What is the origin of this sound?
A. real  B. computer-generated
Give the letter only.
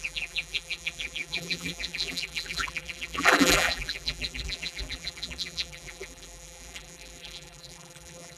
B